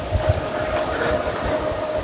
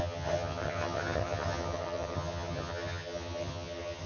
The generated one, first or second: second